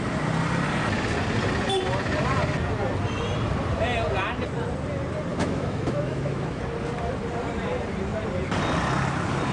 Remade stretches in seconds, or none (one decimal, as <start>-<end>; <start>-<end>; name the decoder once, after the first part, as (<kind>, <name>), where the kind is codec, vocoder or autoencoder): 5.3-6.6 (autoencoder, DAC-VAE)